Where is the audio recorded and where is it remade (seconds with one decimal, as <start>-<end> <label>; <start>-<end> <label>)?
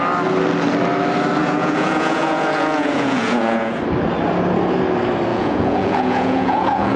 0.0-1.4 recorded; 1.4-3.8 remade; 3.8-5.3 recorded; 5.3-7.0 remade